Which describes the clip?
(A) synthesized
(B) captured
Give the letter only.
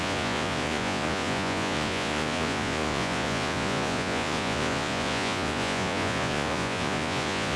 A